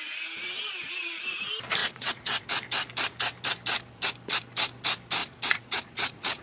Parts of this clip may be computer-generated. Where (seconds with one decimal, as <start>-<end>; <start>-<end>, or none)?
1.8-2.5; 5.2-6.4